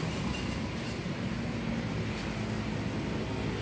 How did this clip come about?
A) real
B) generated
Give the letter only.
A